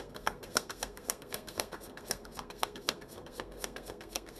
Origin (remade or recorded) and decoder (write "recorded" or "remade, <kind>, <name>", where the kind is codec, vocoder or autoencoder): remade, codec, SNAC